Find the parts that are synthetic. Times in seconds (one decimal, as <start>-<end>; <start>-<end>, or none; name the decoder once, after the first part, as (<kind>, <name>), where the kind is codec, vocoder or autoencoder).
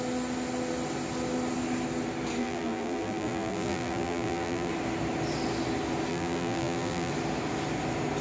2.4-4.7 (vocoder, BigVGAN v2); 6.1-7.1